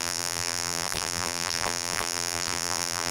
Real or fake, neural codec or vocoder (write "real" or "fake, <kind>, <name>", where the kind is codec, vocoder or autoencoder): fake, vocoder, BigVGAN v2